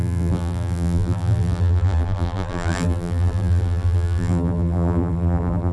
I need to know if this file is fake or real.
fake